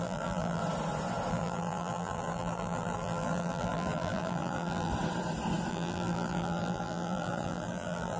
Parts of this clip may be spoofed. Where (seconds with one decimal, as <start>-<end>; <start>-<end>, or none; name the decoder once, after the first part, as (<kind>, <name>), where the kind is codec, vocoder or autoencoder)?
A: 0.0-0.6 (vocoder, BigVGAN v2); 1.3-4.9; 5.7-8.2